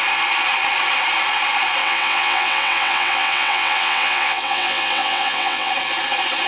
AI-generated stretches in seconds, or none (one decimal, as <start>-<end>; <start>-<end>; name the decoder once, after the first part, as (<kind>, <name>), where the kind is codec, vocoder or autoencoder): 1.8-5.7 (vocoder, WaveNeXt)